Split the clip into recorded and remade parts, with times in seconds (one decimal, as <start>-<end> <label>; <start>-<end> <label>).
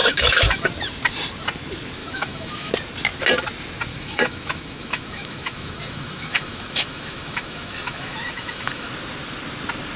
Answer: 0.0-0.7 remade; 0.7-2.0 recorded; 2.0-2.7 remade; 2.7-3.9 recorded; 3.9-8.9 remade; 8.9-10.0 recorded